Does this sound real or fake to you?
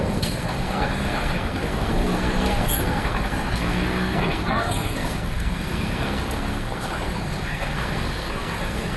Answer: fake